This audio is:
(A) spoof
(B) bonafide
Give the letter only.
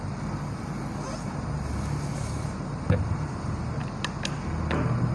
B